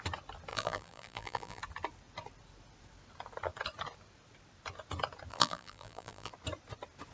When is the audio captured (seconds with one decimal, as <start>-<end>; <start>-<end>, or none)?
0.0-0.5; 1.6-5.3; 6.3-7.1